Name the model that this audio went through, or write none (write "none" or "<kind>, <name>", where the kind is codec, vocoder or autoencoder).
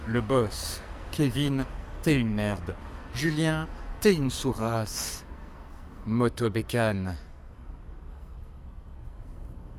codec, SNAC